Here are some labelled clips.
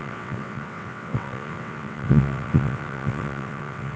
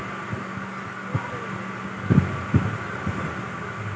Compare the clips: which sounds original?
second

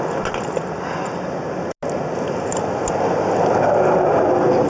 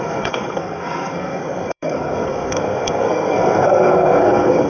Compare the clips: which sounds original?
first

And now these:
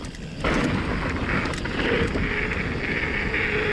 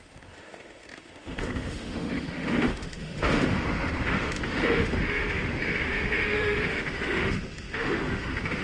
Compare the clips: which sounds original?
first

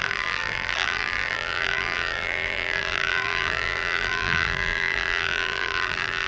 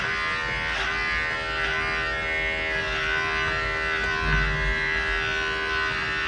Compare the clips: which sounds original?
second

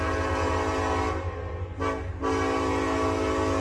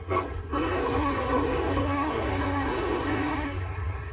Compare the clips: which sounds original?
first